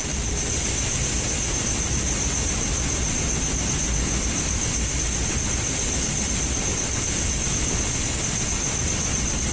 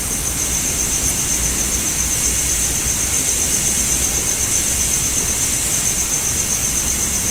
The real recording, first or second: second